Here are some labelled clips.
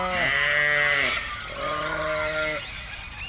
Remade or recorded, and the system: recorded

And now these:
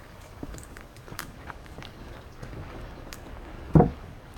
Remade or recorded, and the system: remade, codec, DAC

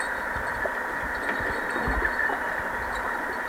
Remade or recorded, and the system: recorded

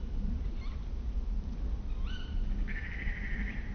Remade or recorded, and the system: recorded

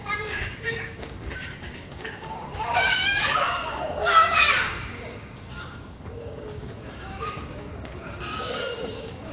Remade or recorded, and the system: remade, codec, DAC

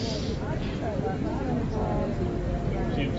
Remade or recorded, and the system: recorded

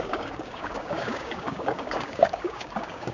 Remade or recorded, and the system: remade, codec, DAC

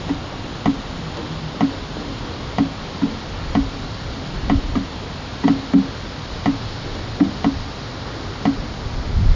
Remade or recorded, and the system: recorded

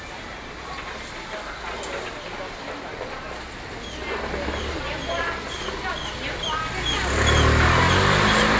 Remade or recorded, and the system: recorded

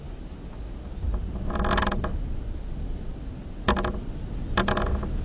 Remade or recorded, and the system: recorded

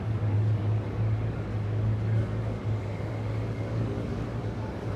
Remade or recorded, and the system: remade, codec, DAC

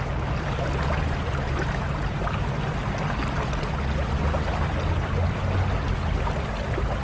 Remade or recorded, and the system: recorded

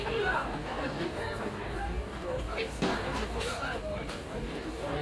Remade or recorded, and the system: remade, codec, DAC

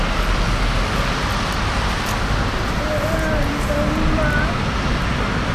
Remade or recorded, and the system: recorded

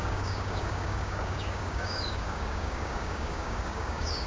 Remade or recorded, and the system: remade, codec, DAC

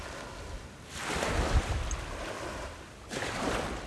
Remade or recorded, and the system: recorded